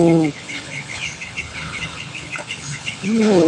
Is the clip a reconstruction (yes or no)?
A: yes